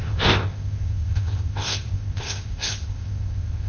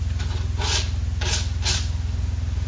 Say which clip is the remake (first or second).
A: first